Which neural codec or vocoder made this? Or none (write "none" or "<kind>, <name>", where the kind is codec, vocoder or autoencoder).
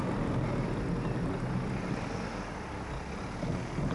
none